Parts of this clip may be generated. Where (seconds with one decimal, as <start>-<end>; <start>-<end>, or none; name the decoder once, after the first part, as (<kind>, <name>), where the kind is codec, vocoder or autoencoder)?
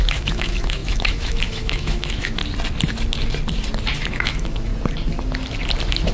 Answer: 0.0-2.4 (autoencoder, DAC-VAE); 4.1-4.7